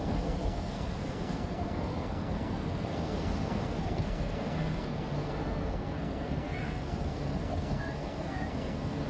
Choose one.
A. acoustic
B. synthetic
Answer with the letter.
B